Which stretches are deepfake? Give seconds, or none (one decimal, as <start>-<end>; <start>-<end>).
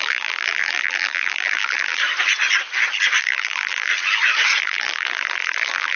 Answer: 0.0-2.0; 3.2-3.9; 4.6-6.0